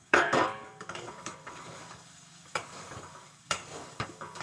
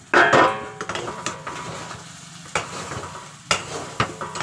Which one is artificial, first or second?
first